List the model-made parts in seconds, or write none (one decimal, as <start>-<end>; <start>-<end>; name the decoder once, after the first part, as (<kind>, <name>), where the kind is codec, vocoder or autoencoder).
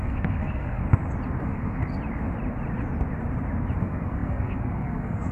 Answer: 0.0-0.8 (codec, SNAC); 1.4-1.8; 3.8-5.3